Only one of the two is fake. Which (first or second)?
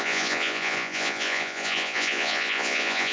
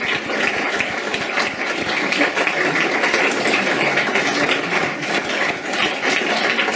first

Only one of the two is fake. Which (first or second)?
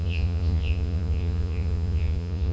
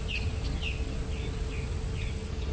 first